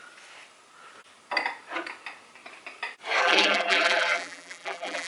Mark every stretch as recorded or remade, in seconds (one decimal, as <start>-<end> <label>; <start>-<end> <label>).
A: 0.0-3.2 recorded; 3.2-5.1 remade